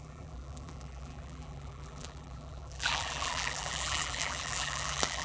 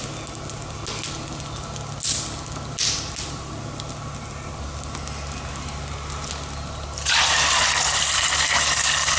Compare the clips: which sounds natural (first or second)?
second